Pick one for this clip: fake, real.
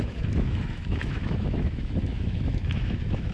fake